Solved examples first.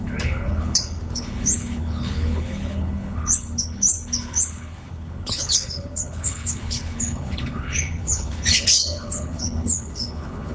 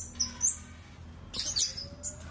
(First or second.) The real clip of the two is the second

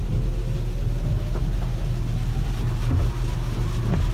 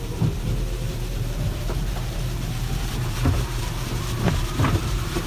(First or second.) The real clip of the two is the first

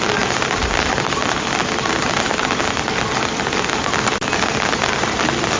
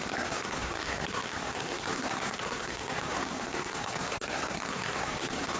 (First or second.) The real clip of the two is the first